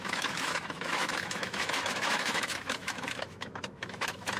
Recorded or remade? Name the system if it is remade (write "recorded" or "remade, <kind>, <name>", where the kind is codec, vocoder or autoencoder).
remade, autoencoder, DAC-VAE